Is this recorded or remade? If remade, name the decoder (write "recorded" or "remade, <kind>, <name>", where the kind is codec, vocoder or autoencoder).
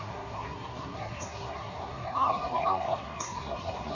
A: remade, codec, SNAC